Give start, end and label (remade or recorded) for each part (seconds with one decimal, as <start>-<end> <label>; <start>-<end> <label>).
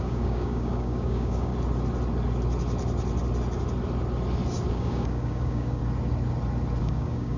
0.0-1.5 remade; 1.5-4.7 recorded; 4.7-5.8 remade; 5.8-6.8 recorded; 6.8-7.4 remade